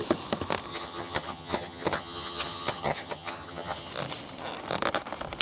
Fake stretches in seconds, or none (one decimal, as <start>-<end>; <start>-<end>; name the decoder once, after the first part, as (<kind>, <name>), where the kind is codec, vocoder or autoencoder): 0.7-3.9 (vocoder, HiFi-GAN)